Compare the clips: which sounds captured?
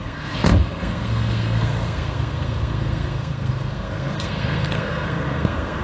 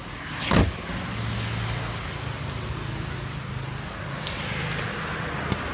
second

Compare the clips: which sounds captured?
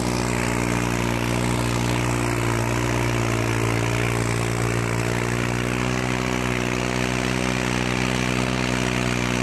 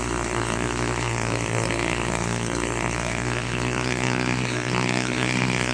first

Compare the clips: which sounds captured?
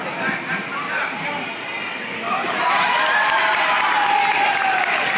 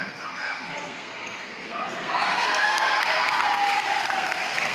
first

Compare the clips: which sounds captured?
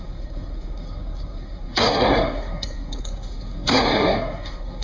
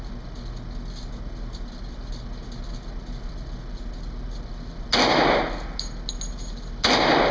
second